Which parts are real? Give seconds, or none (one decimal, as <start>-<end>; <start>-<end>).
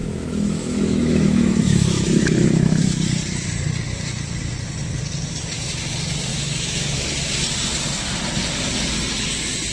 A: 2.8-6.3; 7.1-9.7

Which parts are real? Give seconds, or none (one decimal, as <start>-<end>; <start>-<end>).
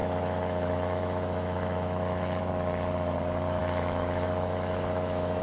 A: 2.5-3.6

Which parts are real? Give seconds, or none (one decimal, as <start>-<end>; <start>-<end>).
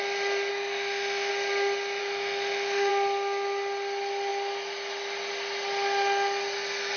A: 0.0-0.5; 1.3-2.0; 2.9-7.0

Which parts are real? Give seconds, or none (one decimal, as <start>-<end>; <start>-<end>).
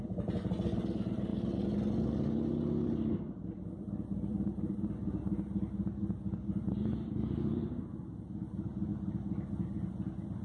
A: 0.0-10.4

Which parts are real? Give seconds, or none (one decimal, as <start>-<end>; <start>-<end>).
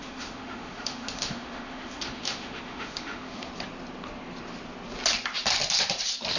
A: 3.5-6.4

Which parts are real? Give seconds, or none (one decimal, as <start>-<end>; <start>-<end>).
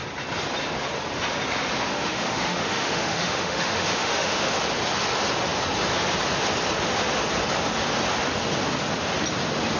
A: 0.0-1.9; 4.5-9.8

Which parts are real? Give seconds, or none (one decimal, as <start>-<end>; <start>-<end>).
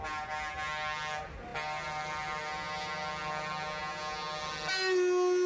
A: 0.0-5.5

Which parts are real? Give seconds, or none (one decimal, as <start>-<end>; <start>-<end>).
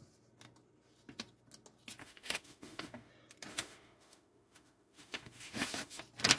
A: 0.0-2.0; 3.1-3.5; 6.0-6.4